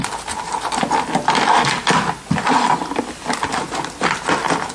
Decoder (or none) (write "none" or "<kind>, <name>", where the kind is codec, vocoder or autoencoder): none